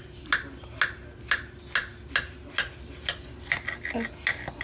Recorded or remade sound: recorded